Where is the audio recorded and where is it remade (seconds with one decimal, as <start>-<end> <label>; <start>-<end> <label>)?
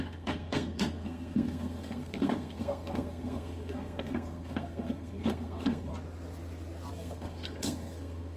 0.0-5.9 remade; 5.9-6.9 recorded; 6.9-8.4 remade